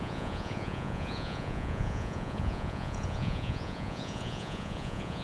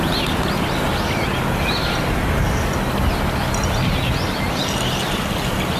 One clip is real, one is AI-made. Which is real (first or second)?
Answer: second